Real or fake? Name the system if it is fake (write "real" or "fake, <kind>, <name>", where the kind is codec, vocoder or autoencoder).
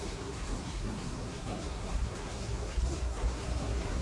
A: fake, codec, SNAC